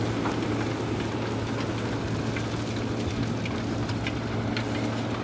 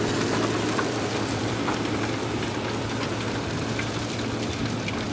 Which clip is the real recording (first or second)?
first